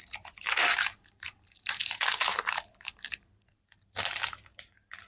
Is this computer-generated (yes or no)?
yes